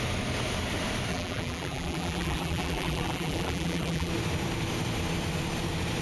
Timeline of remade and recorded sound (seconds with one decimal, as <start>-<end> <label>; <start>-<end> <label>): 0.0-1.1 recorded; 1.1-4.1 remade; 4.1-6.0 recorded